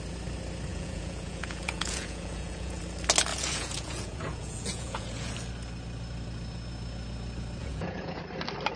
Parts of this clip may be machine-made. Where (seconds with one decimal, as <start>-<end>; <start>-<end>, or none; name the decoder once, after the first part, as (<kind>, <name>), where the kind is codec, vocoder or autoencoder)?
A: 0.7-2.8 (vocoder, Vocos); 3.3-5.3; 7.6-8.2